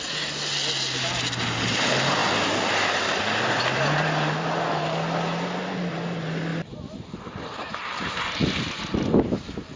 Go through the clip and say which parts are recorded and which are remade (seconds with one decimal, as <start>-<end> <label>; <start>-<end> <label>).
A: 0.0-9.8 recorded